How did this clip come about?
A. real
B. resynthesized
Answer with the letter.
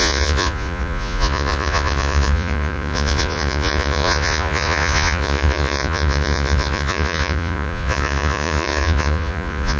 B